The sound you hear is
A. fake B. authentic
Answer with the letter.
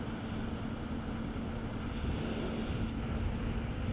B